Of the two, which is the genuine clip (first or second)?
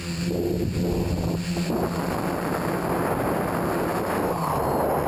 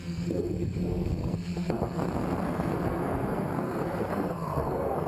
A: first